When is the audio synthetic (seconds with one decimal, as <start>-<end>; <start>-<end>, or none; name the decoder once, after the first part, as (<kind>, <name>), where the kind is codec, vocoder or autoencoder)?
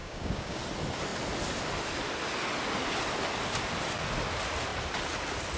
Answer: 0.0-0.6 (codec, DAC)